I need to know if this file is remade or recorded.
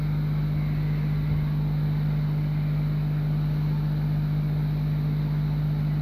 recorded